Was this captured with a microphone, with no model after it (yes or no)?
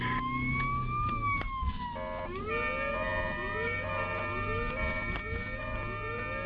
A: yes